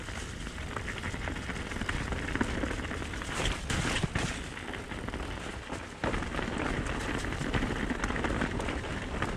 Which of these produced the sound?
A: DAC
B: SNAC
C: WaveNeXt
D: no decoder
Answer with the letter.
D